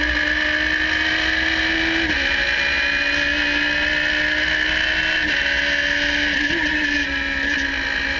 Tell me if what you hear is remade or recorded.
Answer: recorded